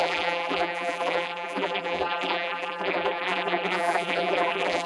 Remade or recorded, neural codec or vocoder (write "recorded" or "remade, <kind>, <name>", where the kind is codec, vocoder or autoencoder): remade, vocoder, BigVGAN v2